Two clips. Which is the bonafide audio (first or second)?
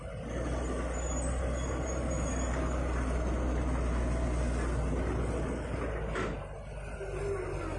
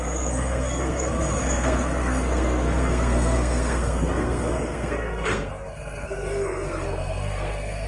first